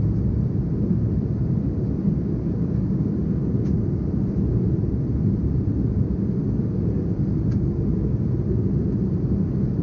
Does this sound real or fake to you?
real